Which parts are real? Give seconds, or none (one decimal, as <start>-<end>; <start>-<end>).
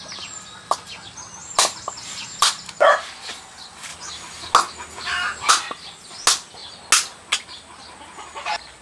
0.0-1.4; 2.5-8.8